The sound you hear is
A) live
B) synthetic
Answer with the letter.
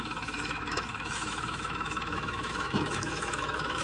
B